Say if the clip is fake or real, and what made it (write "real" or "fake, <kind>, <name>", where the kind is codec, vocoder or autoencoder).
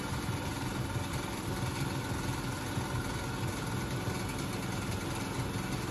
real